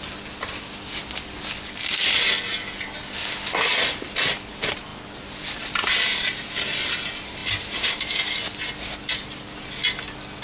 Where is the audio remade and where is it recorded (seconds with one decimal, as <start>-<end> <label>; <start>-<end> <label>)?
0.0-10.4 recorded